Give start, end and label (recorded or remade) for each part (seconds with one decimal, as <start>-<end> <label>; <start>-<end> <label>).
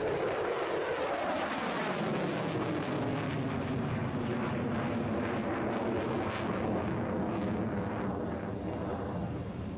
0.0-9.8 recorded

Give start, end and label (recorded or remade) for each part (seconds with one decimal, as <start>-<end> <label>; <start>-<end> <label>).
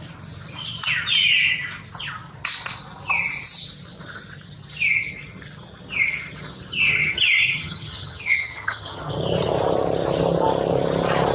0.0-7.0 recorded; 7.0-9.1 remade; 9.1-11.3 recorded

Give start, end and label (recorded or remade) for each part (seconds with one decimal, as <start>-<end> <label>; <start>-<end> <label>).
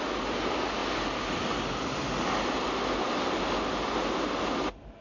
0.0-5.0 recorded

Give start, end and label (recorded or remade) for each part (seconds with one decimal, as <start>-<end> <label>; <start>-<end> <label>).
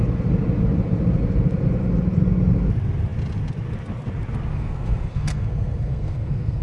0.0-4.5 recorded; 4.5-6.6 remade